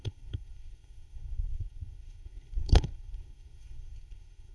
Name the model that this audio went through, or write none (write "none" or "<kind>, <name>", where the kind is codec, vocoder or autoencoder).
codec, SNAC